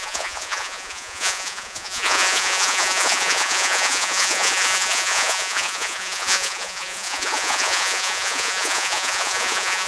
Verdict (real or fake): fake